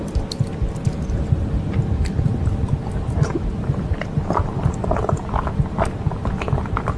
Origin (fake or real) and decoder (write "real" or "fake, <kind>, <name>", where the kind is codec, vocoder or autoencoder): real